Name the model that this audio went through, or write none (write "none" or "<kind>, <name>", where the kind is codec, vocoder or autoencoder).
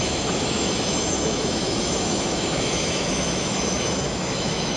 autoencoder, DAC-VAE